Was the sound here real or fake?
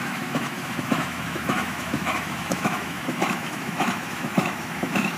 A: fake